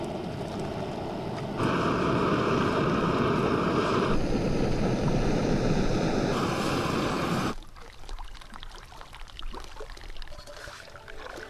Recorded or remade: recorded